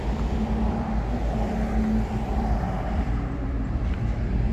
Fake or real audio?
fake